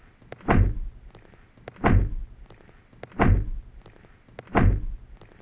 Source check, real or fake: real